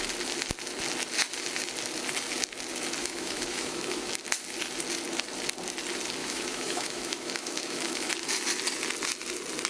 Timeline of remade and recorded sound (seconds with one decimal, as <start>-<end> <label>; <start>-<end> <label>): 0.0-3.0 recorded; 3.0-4.1 remade; 4.1-6.2 recorded; 6.2-8.1 remade; 8.1-9.7 recorded

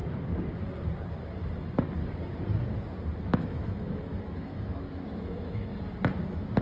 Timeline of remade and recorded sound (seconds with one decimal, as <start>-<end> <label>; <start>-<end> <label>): 0.0-3.2 recorded; 3.2-5.7 remade; 5.7-6.6 recorded

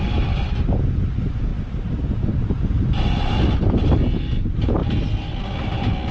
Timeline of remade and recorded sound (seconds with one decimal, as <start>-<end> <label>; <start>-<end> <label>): 0.0-6.1 recorded

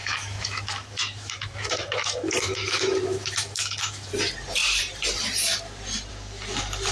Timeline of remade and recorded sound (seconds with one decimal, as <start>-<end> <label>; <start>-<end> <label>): 0.0-4.1 remade; 4.1-6.9 recorded

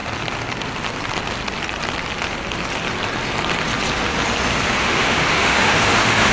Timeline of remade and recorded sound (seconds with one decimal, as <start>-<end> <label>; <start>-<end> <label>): 0.0-4.8 recorded; 4.8-6.3 remade

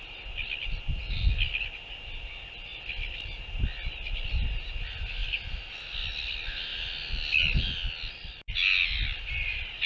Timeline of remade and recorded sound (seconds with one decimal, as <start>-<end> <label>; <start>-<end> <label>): 0.0-9.9 recorded

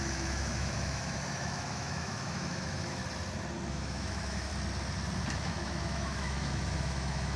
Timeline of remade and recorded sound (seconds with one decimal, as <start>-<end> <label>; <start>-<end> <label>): 0.0-3.0 remade; 3.0-3.7 recorded; 3.7-4.5 remade; 4.5-5.3 recorded; 5.3-7.4 remade

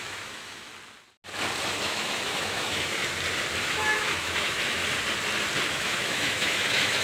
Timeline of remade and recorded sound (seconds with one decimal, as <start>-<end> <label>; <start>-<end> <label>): 0.0-0.7 remade; 0.7-1.8 recorded; 1.8-3.0 remade; 3.0-3.6 recorded; 3.6-4.8 remade; 4.8-5.7 recorded; 5.7-7.0 remade